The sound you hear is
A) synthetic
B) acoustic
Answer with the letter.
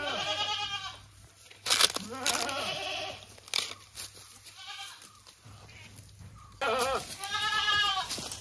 B